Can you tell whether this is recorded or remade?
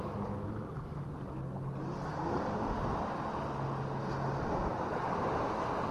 recorded